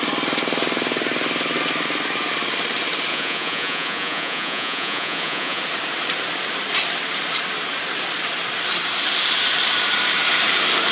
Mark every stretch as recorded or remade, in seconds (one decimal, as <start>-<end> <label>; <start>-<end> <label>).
0.0-3.1 recorded; 3.1-5.6 remade; 5.6-10.9 recorded